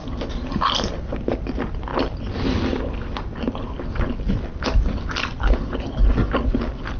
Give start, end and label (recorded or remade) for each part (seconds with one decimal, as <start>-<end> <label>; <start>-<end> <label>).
0.0-7.0 recorded